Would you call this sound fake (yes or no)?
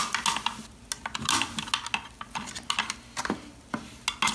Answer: no